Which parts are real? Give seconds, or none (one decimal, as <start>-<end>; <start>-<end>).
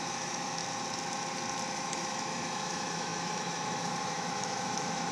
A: 0.6-1.7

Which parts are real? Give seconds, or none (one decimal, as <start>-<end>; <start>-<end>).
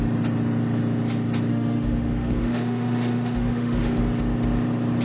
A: 0.0-1.5; 4.0-5.0